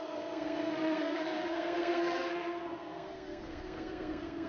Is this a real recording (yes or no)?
no